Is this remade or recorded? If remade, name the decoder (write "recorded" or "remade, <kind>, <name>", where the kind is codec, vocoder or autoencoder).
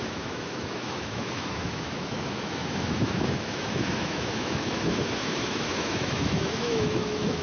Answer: remade, autoencoder, DAC-VAE